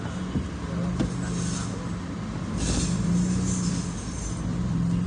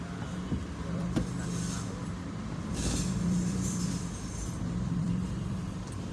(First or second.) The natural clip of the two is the first